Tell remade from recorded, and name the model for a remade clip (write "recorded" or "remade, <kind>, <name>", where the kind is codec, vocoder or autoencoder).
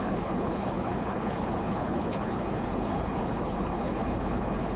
remade, codec, HILCodec